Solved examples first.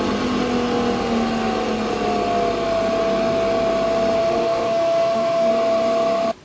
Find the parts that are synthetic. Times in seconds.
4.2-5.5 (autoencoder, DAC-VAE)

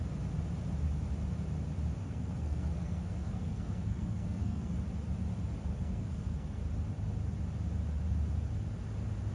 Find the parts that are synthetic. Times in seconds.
2.0-4.8 (codec, SNAC); 5.7-6.6

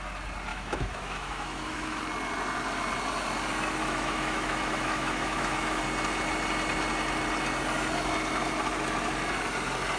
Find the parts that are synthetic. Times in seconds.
0.5-2.0 (autoencoder, DAC-VAE); 3.8-5.8

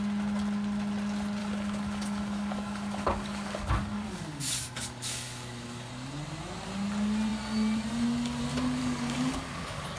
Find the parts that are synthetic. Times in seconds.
1.4-5.9 (codec, DAC); 8.8-10.0

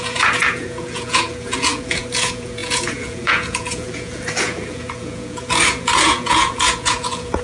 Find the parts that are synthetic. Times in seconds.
0.0-7.4 (vocoder, Vocos)

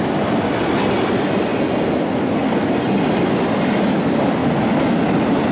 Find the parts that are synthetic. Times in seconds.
none